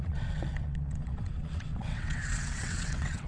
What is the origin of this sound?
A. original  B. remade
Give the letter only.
B